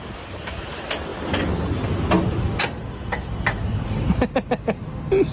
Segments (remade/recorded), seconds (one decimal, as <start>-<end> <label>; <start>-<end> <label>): 0.0-5.3 recorded